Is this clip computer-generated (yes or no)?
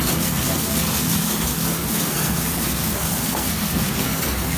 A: yes